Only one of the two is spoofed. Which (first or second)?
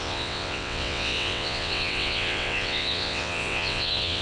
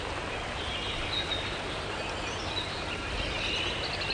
first